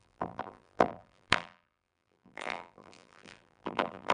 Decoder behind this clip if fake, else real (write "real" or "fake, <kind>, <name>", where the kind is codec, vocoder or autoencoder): fake, vocoder, BigVGAN v2